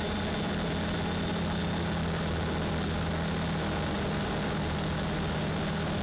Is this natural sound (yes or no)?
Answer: yes